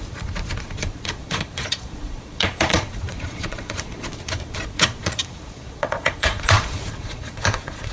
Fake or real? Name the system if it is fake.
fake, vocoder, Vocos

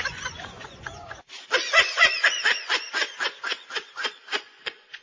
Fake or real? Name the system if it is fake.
fake, vocoder, Vocos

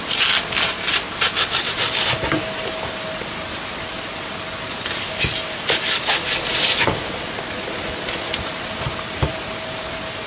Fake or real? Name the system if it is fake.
real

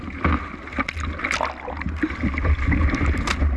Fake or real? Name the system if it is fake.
real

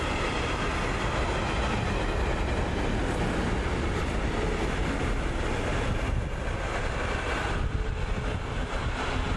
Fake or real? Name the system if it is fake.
real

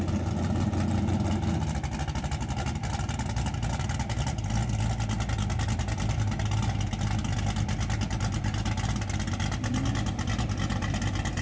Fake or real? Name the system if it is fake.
real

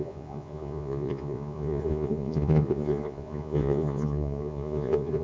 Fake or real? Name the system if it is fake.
fake, vocoder, Vocos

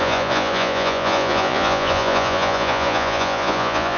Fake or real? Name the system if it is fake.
fake, vocoder, Vocos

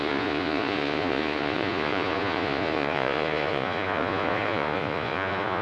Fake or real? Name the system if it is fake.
fake, vocoder, Vocos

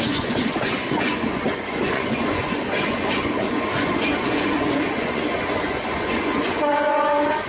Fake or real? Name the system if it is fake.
fake, vocoder, Vocos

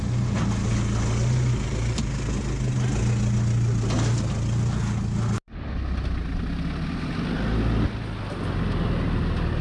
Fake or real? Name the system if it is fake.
real